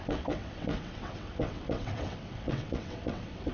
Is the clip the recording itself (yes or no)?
no